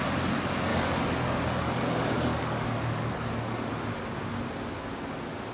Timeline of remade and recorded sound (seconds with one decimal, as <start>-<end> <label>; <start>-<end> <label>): 0.0-0.7 recorded; 0.7-3.7 remade; 3.7-5.5 recorded